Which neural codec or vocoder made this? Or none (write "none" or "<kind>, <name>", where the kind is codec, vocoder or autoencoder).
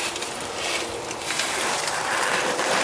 vocoder, BigVGAN v2